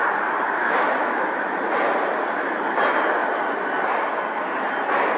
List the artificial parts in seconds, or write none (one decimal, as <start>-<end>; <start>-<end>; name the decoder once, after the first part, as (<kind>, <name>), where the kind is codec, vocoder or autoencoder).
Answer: 0.6-1.4 (autoencoder, DAC-VAE)